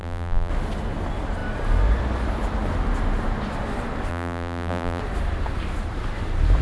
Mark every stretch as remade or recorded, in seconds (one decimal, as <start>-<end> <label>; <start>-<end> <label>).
0.0-0.5 remade; 0.5-4.1 recorded; 4.1-5.0 remade; 5.0-6.6 recorded